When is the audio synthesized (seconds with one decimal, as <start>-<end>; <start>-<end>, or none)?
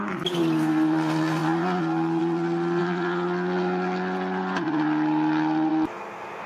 none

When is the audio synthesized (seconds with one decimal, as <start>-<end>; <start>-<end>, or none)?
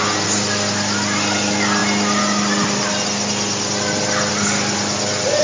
none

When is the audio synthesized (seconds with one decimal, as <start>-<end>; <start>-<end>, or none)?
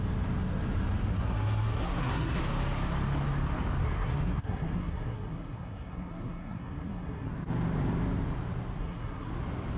1.1-2.4; 3.8-7.3; 8.8-9.3